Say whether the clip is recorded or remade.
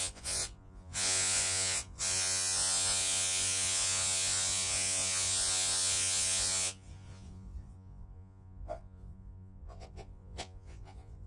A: remade